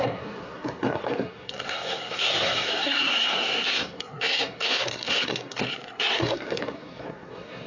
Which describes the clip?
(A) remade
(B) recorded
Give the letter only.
A